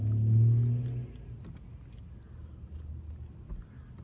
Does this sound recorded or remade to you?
recorded